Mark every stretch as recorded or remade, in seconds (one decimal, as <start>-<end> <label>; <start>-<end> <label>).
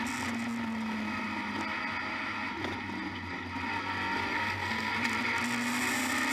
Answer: 0.0-4.3 recorded; 4.3-4.9 remade; 4.9-6.3 recorded